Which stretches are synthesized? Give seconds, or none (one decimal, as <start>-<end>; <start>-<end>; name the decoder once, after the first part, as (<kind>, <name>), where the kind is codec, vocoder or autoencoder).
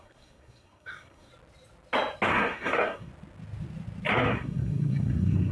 0.0-1.3 (codec, SNAC); 2.3-3.1; 4.1-5.5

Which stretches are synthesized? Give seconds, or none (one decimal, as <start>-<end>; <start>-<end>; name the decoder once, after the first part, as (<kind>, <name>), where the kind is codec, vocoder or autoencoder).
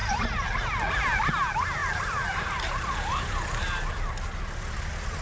none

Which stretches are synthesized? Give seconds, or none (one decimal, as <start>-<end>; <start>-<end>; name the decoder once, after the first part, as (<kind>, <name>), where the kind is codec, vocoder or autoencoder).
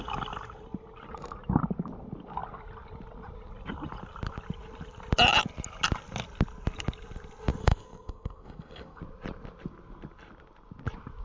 7.6-9.0 (codec, SNAC)